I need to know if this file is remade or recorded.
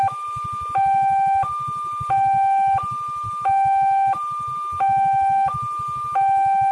recorded